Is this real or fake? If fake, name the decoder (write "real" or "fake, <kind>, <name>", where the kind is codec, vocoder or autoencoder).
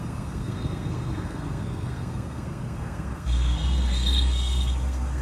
fake, codec, SNAC